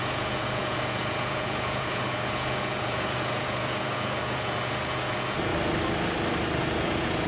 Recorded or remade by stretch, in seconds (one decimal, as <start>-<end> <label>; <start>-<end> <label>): 0.0-5.5 remade; 5.5-6.6 recorded; 6.6-7.3 remade